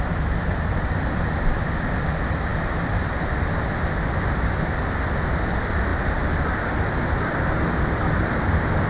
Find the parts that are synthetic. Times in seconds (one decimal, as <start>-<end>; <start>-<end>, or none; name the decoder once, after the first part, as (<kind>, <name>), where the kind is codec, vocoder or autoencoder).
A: none